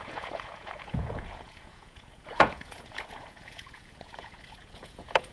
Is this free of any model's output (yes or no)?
no